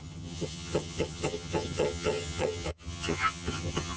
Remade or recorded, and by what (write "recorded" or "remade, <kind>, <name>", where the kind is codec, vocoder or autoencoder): remade, vocoder, HiFi-GAN